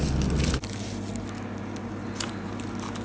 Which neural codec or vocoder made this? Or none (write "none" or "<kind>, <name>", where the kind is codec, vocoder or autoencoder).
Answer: none